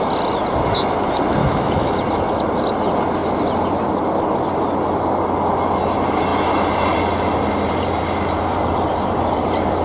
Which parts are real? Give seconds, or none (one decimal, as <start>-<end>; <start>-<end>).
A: 0.0-1.4; 2.0-9.8

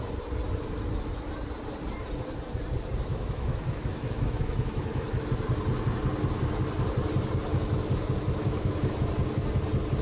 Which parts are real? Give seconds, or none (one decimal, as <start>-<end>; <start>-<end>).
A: 0.0-3.1; 5.3-7.5; 9.1-10.0

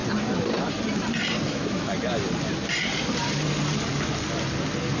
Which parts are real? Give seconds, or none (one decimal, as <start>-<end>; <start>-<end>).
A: 0.0-1.5; 1.9-5.0

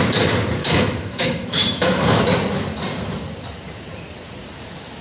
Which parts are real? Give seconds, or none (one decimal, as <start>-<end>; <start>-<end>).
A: 0.0-0.6; 2.2-5.0

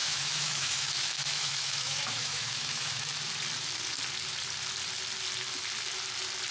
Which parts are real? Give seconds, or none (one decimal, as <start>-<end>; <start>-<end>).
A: 3.1-6.5